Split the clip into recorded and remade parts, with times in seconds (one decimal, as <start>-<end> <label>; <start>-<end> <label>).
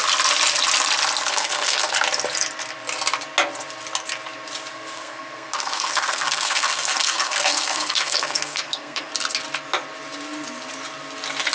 0.0-1.3 recorded; 1.3-1.9 remade; 1.9-4.7 recorded; 4.7-9.1 remade; 9.1-11.5 recorded